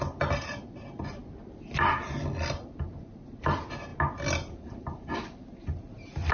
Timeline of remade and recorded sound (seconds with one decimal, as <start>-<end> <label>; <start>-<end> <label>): 0.0-6.3 recorded